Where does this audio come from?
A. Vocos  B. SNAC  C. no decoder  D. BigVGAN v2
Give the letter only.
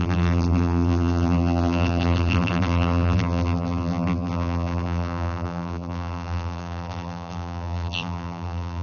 D